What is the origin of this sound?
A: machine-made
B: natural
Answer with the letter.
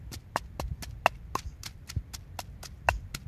B